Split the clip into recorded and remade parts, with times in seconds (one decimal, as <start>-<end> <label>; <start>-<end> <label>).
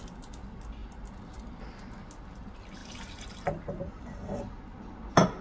0.0-2.8 recorded; 2.8-4.4 remade; 4.4-5.4 recorded